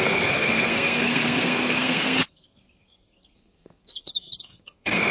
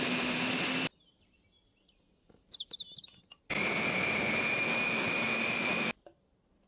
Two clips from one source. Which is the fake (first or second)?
first